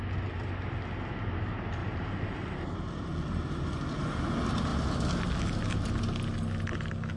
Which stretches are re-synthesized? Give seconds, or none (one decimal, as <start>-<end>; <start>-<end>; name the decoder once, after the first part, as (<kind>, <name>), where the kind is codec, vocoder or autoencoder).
1.8-3.6 (vocoder, BigVGAN v2)